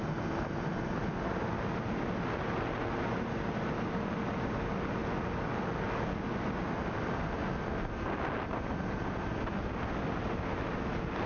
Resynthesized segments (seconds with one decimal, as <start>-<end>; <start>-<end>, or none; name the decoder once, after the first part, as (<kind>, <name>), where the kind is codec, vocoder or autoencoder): none